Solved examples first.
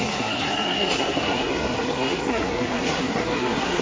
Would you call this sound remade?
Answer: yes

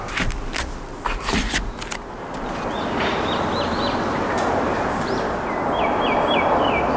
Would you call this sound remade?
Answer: no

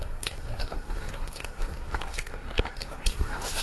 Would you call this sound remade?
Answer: yes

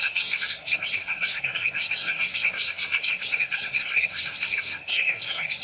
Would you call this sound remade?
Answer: yes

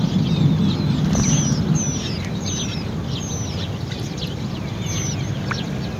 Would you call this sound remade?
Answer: no